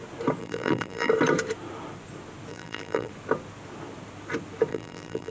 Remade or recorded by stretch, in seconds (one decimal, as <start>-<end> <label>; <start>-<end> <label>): 0.0-0.4 recorded; 0.4-1.1 remade; 1.1-2.5 recorded; 2.5-3.1 remade; 3.1-4.7 recorded; 4.7-5.3 remade